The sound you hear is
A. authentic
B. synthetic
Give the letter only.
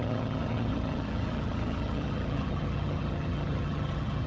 B